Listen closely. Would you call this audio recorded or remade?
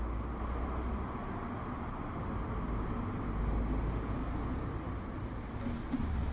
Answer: recorded